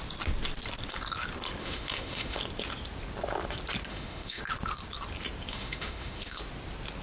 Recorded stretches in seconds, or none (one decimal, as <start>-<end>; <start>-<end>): 0.0-1.6; 2.4-3.9; 4.4-5.5; 6.4-7.0